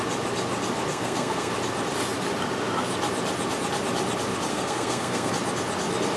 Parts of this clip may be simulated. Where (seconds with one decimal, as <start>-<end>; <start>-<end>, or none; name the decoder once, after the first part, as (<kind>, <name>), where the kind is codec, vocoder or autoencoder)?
0.9-1.5 (codec, SNAC); 4.5-5.3

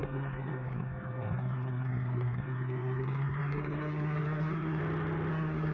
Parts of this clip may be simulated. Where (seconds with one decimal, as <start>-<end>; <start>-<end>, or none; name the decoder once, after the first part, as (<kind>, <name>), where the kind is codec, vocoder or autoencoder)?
0.0-4.8 (codec, SNAC); 5.3-5.7

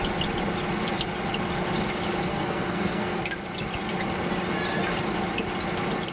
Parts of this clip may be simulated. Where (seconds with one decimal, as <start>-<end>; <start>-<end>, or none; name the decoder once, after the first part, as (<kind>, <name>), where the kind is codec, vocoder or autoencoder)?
2.3-3.2 (codec, SNAC)

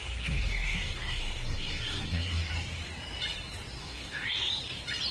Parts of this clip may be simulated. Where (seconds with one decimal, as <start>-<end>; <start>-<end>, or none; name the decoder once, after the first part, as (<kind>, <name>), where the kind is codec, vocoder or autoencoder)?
0.0-2.5 (codec, SNAC); 3.8-4.5

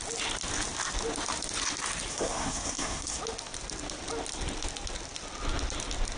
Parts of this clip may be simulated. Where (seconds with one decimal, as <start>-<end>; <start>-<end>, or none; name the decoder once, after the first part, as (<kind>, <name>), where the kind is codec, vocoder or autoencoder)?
2.1-3.2 (codec, SNAC)

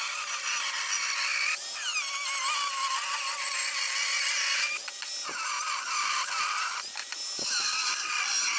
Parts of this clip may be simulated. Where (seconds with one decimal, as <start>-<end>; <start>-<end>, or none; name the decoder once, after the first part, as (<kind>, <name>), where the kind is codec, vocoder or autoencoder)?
none